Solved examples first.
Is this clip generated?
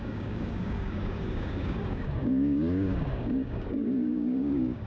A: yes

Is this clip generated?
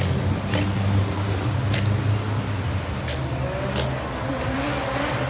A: no